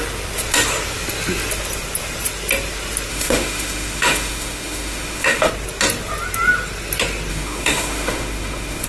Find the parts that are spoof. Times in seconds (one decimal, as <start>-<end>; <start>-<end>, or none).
3.1-5.5; 7.3-8.9